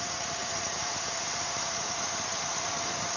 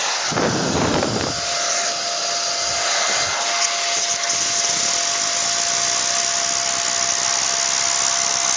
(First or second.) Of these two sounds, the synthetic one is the first